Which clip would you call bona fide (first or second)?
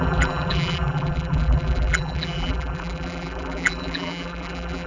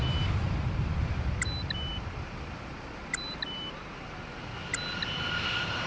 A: second